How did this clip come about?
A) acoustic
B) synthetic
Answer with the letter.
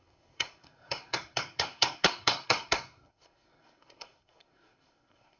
B